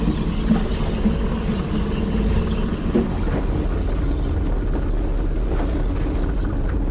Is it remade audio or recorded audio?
recorded